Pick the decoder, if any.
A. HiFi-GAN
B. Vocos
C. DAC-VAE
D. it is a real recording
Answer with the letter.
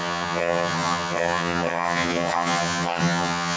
A